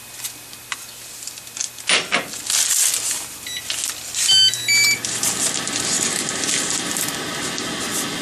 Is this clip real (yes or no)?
yes